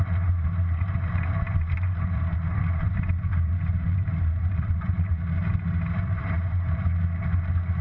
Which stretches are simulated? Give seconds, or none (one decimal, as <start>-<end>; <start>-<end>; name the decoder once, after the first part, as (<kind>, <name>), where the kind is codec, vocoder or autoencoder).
0.0-6.9 (vocoder, BigVGAN v2)